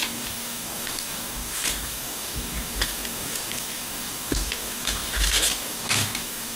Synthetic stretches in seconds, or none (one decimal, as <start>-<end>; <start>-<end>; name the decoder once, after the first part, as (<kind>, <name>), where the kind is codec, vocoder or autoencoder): 0.0-6.6 (codec, DAC)